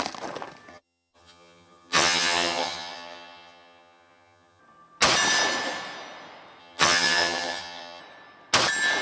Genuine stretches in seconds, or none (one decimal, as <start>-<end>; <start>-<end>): 0.0-0.7; 4.6-6.6; 8.0-9.0